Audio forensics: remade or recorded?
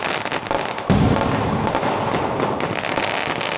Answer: recorded